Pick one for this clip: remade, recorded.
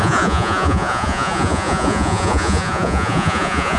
remade